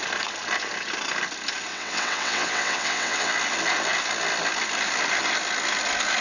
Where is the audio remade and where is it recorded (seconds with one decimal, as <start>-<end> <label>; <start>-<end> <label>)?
0.0-1.7 recorded; 1.7-3.3 remade; 3.3-6.2 recorded